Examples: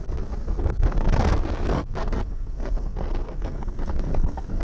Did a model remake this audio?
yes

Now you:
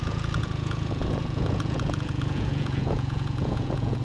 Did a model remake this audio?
yes